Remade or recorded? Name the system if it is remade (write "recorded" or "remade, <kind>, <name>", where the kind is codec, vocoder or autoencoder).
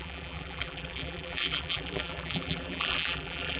remade, vocoder, BigVGAN v2